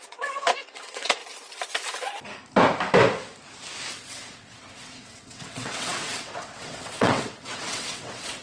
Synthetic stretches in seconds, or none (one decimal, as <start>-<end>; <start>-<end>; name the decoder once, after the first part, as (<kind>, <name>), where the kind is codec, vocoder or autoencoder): 0.0-1.2 (vocoder, WaveNeXt); 3.9-8.4